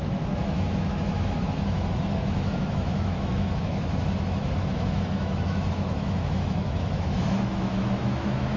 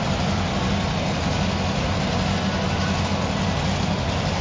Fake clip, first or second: first